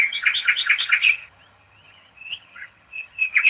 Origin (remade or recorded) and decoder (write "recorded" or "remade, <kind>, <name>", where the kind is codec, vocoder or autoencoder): remade, vocoder, HiFi-GAN